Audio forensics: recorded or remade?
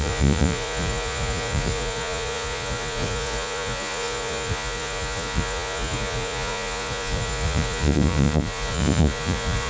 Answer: remade